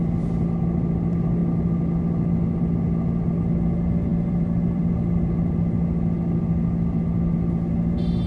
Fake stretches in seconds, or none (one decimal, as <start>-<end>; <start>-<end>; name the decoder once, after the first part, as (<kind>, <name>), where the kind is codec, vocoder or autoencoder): 4.1-5.6 (vocoder, BigVGAN v2)